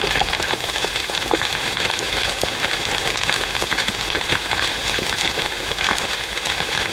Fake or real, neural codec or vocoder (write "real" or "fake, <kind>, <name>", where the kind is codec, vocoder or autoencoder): fake, autoencoder, DAC-VAE